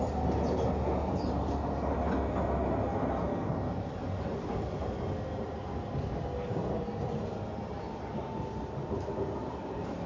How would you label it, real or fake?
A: real